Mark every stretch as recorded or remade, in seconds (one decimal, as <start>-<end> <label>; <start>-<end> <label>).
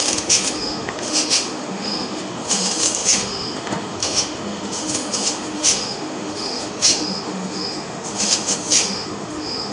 0.0-9.7 remade